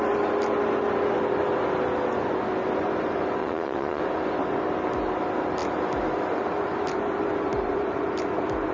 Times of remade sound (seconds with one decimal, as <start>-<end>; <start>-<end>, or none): 3.4-4.0